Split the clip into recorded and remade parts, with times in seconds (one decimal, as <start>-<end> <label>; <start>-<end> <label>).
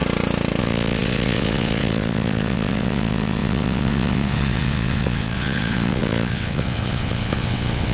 0.0-0.6 recorded; 0.6-7.9 remade